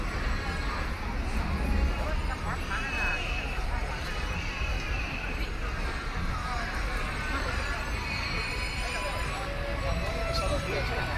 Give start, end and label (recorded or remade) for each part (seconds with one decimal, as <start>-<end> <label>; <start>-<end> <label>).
0.0-11.2 recorded

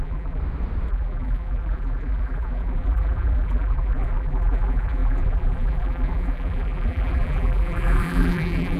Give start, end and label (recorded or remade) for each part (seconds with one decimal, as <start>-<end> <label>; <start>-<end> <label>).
0.0-0.4 remade; 0.4-0.9 recorded; 0.9-8.8 remade